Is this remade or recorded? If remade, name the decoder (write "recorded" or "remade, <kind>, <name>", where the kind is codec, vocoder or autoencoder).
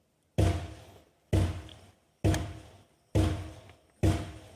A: recorded